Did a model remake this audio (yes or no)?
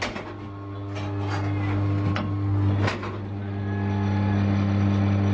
no